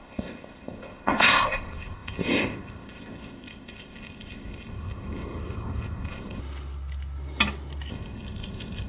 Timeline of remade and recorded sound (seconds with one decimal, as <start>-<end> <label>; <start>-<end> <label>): 0.0-6.4 remade; 6.4-7.9 recorded; 7.9-8.9 remade